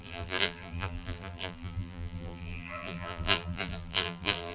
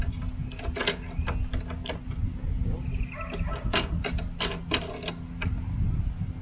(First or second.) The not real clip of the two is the first